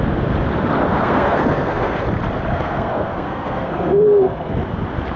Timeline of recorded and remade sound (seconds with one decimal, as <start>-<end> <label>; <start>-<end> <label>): 0.0-0.9 recorded; 0.9-2.0 remade; 2.0-2.5 recorded; 2.5-4.6 remade; 4.6-5.2 recorded